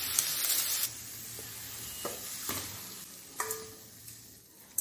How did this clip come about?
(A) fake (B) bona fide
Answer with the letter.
B